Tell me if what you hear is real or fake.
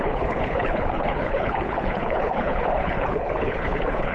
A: fake